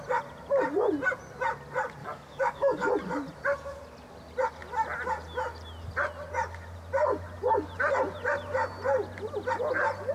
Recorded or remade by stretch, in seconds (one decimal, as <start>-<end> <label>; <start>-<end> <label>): 0.0-2.0 recorded; 2.0-2.9 remade; 2.9-10.1 recorded